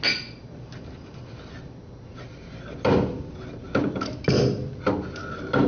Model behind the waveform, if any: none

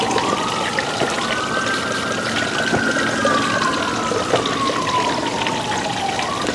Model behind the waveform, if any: none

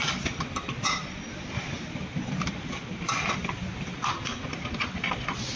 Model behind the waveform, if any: none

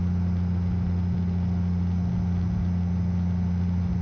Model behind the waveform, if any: none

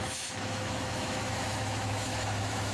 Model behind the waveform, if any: autoencoder, DAC-VAE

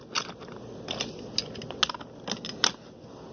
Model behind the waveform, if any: none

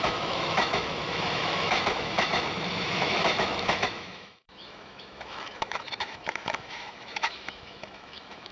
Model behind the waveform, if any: autoencoder, DAC-VAE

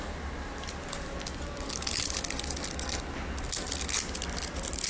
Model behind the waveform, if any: none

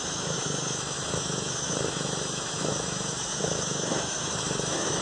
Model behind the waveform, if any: autoencoder, DAC-VAE